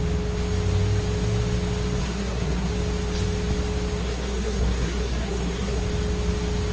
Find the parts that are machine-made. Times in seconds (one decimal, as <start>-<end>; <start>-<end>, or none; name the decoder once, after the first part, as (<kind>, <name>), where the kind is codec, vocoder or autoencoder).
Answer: 2.0-2.7 (codec, SNAC); 4.0-5.8